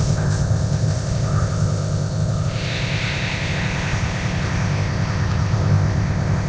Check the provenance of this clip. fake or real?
fake